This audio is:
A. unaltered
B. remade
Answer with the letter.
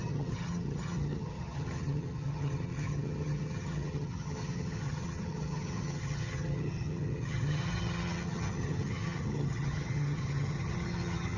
B